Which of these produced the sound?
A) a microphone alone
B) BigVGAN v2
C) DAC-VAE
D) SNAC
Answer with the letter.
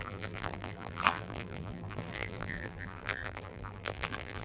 B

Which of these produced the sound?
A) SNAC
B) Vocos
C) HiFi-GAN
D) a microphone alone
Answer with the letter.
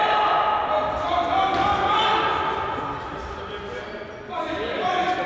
D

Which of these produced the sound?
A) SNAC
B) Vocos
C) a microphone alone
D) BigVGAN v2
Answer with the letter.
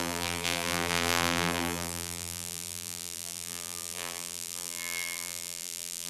D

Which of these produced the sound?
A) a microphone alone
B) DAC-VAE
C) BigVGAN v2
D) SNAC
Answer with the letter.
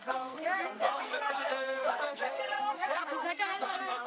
D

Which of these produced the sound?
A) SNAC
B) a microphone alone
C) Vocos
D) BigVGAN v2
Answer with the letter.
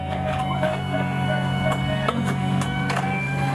A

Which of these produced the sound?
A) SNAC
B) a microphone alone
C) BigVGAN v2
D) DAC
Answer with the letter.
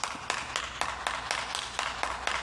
B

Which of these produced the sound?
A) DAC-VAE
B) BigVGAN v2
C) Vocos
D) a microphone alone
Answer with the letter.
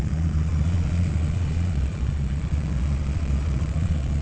C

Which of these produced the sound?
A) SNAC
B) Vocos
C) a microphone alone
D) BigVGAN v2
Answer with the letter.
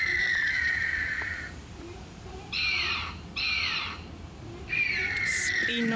D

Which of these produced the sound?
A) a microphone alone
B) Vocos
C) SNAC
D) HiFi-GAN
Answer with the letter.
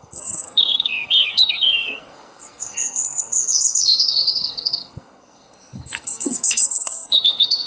C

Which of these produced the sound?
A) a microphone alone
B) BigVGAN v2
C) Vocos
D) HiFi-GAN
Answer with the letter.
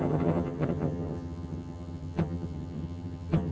D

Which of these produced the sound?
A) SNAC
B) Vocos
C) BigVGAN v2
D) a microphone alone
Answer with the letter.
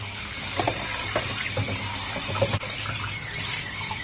D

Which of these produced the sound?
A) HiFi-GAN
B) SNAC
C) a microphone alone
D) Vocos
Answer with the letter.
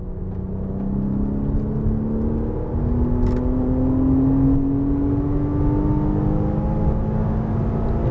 C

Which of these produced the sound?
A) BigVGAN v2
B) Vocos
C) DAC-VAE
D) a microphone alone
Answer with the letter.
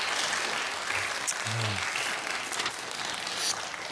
D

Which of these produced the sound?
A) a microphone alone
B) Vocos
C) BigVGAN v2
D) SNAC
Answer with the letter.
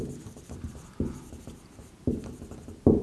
C